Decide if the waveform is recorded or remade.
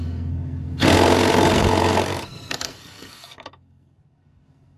remade